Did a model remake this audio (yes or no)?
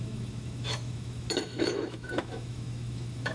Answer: yes